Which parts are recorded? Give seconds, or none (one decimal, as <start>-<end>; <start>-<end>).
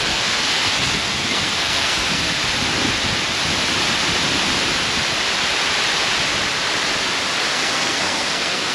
2.4-7.5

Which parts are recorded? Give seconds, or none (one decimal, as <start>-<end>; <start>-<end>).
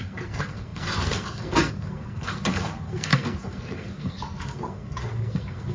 none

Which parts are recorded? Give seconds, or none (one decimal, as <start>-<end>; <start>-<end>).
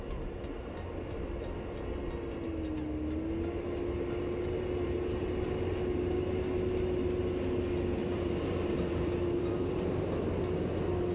0.0-8.0; 10.4-11.1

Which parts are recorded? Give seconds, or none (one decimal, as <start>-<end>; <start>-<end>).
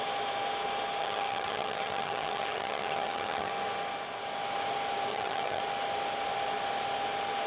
0.0-1.0; 3.5-5.1; 5.6-7.5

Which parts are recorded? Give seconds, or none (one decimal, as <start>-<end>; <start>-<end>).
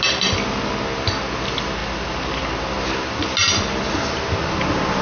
0.0-5.0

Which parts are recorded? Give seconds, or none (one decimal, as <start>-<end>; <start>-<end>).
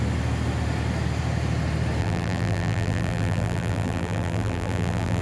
0.0-2.0